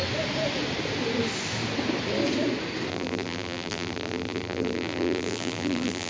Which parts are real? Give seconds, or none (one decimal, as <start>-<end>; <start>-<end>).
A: 0.0-2.9